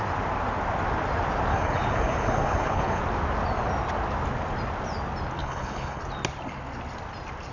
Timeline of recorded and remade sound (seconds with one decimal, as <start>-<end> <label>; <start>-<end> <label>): 0.0-1.5 recorded; 1.5-3.0 remade; 3.0-5.4 recorded; 5.4-6.0 remade; 6.0-7.5 recorded

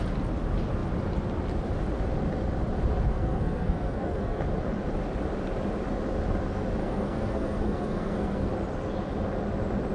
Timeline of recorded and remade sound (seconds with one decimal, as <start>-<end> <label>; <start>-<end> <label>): 0.0-3.1 recorded; 3.1-4.4 remade; 4.4-6.8 recorded; 6.8-8.5 remade; 8.5-9.9 recorded

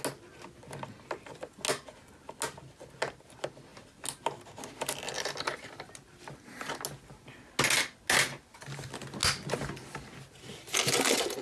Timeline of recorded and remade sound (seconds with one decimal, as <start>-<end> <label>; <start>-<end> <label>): 0.0-11.4 recorded

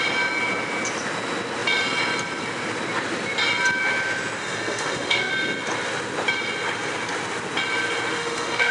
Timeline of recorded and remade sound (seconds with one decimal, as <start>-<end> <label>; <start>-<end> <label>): 0.0-4.4 recorded; 4.4-5.3 remade; 5.3-8.1 recorded; 8.1-8.7 remade

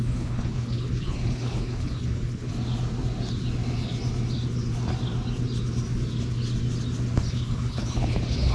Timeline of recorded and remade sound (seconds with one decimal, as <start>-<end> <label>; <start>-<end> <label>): 0.0-2.5 remade; 2.5-7.3 recorded; 7.3-8.5 remade

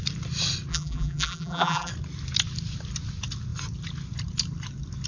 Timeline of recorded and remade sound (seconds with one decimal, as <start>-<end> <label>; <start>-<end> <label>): 0.0-0.7 recorded; 0.7-1.9 remade; 1.9-5.1 recorded